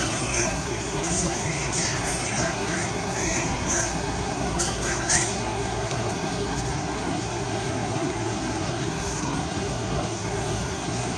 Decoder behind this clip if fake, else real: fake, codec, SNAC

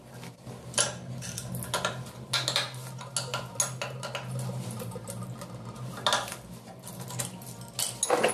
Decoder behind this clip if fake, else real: real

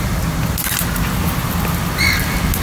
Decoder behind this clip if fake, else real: real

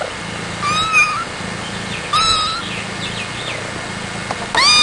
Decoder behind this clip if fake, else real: real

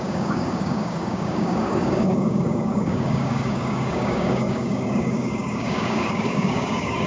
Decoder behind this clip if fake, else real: fake, codec, DAC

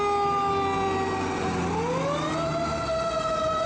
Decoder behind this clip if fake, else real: real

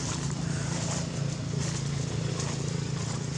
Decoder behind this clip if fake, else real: real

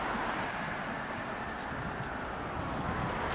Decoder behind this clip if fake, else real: real